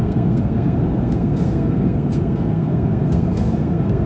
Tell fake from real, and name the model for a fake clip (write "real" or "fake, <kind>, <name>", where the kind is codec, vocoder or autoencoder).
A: fake, codec, SNAC